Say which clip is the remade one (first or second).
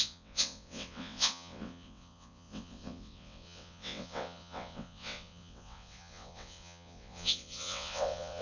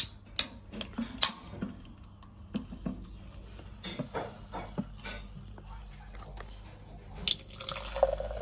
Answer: first